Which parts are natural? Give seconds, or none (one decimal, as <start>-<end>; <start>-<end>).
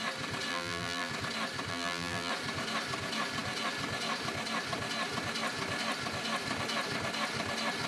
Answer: 0.0-0.5; 1.1-1.7; 2.3-7.9